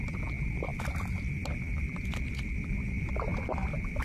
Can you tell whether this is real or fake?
real